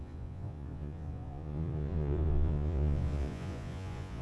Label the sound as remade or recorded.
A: remade